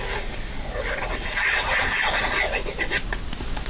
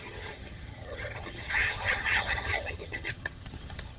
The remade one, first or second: second